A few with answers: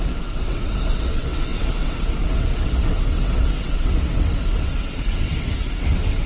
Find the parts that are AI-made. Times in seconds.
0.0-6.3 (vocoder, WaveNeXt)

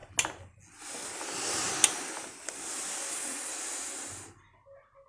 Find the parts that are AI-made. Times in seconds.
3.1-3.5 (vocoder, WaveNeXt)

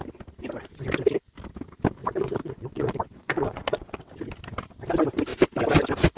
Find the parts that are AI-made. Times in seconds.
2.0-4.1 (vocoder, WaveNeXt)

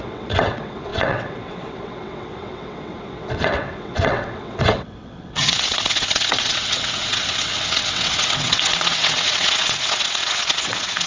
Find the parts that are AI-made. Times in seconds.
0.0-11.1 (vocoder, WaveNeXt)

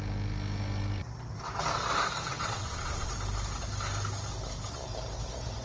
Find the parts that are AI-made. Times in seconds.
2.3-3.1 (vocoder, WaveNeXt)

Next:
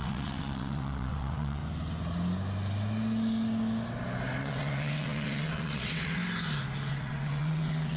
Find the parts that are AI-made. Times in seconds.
0.0-1.6 (vocoder, WaveNeXt); 4.4-6.2; 6.9-8.0

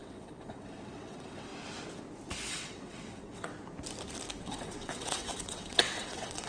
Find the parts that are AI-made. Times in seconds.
0.0-1.5 (vocoder, WaveNeXt); 2.5-3.5; 4.4-6.5

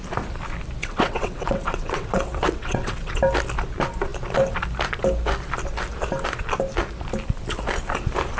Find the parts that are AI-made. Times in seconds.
0.8-3.2 (vocoder, WaveNeXt)